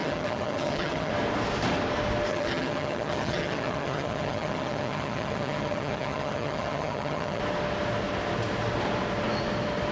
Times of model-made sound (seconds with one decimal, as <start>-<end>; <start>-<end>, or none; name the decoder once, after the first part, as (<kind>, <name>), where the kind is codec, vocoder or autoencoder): 0.0-1.1 (vocoder, HiFi-GAN); 2.3-7.4